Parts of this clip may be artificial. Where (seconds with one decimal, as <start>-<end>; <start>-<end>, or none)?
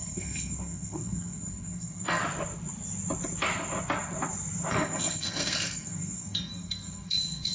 0.0-2.2; 4.7-7.5